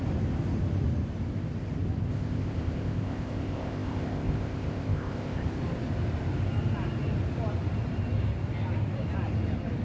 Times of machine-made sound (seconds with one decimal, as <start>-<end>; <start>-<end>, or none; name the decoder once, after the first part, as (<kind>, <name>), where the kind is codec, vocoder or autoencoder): 2.1-5.6 (codec, ZipCodec)